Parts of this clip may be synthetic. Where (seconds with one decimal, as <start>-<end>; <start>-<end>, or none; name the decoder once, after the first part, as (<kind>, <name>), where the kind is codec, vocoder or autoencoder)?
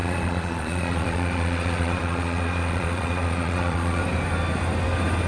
0.0-4.0 (vocoder, Vocos)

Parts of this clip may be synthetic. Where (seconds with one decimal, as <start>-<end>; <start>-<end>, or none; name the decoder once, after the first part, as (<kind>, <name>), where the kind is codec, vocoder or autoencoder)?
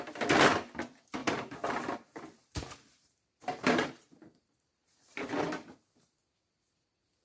1.2-5.3 (vocoder, BigVGAN v2)